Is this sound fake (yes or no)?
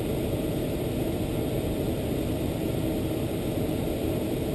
no